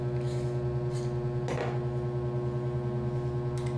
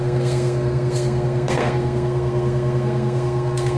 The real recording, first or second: first